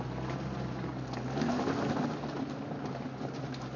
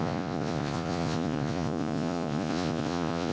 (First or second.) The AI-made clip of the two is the second